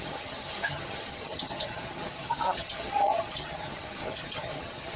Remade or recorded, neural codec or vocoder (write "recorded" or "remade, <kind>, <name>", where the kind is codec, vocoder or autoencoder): remade, vocoder, HiFi-GAN